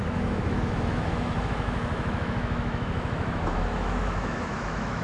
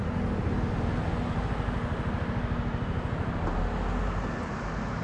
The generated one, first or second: first